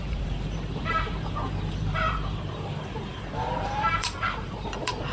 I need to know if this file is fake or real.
fake